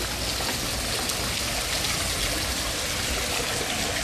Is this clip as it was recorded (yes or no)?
yes